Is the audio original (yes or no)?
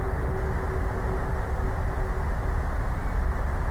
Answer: yes